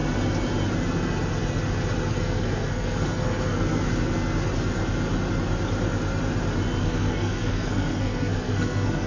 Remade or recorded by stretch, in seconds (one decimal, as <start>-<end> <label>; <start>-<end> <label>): 0.0-2.1 recorded; 2.1-3.9 remade; 3.9-6.8 recorded; 6.8-9.1 remade